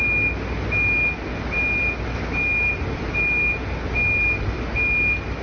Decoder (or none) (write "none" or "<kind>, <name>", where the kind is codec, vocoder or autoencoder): none